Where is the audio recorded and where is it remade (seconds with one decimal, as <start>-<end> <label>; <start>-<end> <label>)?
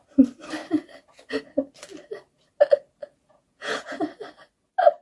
0.0-3.0 recorded; 3.0-4.0 remade; 4.0-5.0 recorded